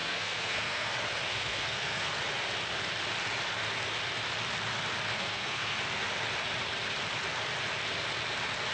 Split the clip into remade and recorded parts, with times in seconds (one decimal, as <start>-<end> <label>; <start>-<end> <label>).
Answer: 0.0-0.9 remade; 0.9-1.3 recorded; 1.3-2.1 remade; 2.1-5.1 recorded; 5.1-5.8 remade; 5.8-8.7 recorded